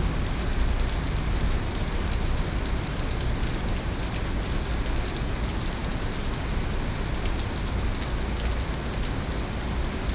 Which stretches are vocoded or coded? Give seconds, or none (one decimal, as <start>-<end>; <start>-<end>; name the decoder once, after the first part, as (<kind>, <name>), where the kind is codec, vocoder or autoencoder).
none